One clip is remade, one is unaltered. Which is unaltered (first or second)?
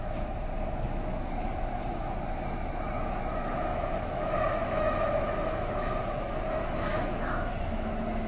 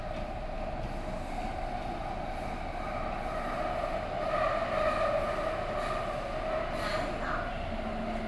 second